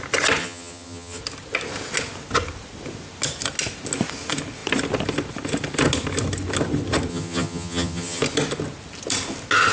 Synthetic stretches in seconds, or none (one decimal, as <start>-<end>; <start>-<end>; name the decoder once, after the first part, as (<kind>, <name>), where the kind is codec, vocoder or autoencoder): 0.4-1.2 (vocoder, HiFi-GAN); 7.1-8.2